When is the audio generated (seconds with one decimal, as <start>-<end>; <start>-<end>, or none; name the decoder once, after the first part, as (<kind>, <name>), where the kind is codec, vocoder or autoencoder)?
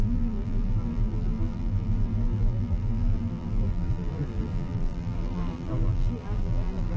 0.0-7.0 (vocoder, BigVGAN v2)